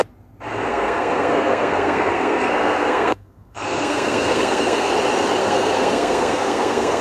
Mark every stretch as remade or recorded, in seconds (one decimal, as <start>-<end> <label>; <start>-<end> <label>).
0.0-0.7 recorded; 0.7-4.9 remade; 4.9-5.4 recorded; 5.4-7.0 remade

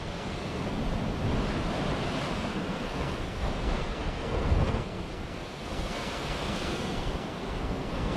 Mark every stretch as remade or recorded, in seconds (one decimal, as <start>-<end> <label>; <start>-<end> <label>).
0.0-0.8 remade; 0.8-2.4 recorded; 2.4-8.2 remade

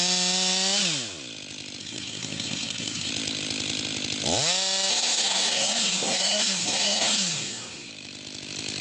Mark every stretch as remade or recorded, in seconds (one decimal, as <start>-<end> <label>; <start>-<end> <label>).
0.0-1.8 recorded; 1.8-3.1 remade; 3.1-4.9 recorded; 4.9-7.9 remade; 7.9-8.8 recorded

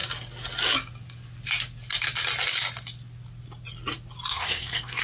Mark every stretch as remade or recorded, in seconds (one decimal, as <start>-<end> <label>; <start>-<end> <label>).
0.0-4.3 recorded; 4.3-5.0 remade

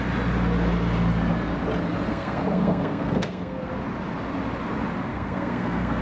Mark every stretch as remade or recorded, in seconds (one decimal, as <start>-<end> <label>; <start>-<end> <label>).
0.0-2.1 recorded; 2.1-3.7 remade; 3.7-5.1 recorded; 5.1-6.0 remade

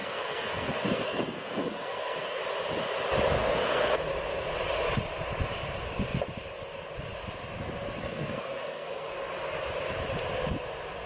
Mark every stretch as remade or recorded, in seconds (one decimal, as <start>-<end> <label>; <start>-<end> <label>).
0.0-2.4 remade; 2.4-3.4 recorded; 3.4-4.0 remade; 4.0-8.0 recorded; 8.0-9.1 remade; 9.1-11.1 recorded

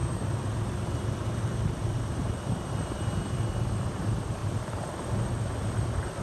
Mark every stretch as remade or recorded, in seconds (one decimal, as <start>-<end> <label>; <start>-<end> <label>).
0.0-6.2 recorded